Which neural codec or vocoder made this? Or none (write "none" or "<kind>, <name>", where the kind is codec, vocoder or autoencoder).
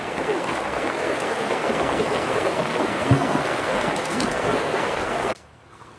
codec, SNAC